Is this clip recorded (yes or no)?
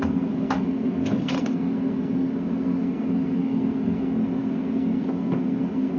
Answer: no